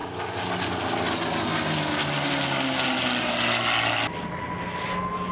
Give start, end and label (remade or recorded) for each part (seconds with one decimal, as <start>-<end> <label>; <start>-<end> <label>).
0.0-5.3 recorded